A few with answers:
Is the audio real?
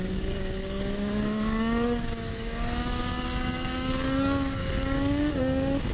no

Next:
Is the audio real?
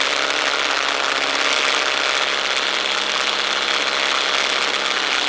yes